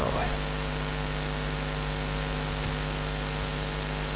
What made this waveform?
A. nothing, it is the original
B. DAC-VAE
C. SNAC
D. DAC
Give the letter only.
A